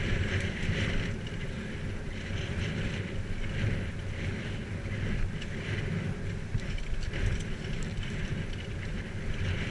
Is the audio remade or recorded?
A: recorded